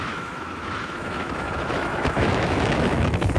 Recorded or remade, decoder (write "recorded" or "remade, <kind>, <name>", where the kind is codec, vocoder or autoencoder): remade, autoencoder, DAC-VAE